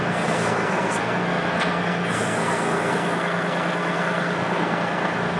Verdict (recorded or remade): remade